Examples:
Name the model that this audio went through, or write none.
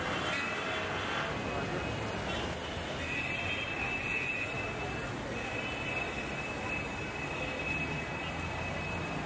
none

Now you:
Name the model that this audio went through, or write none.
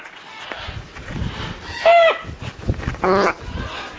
none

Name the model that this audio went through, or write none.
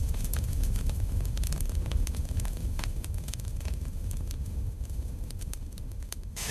autoencoder, DAC-VAE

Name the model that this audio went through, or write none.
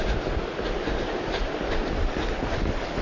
none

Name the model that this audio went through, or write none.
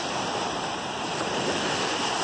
none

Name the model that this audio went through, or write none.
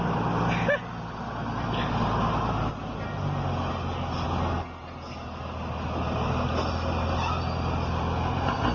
none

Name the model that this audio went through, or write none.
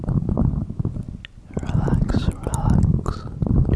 none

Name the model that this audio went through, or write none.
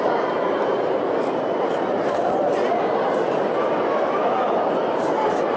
none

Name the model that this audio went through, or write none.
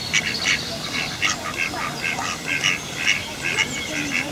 none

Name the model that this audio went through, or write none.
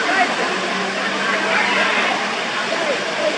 none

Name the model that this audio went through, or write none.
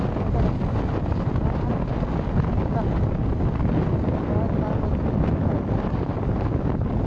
none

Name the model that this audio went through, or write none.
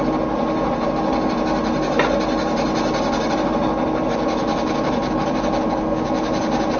none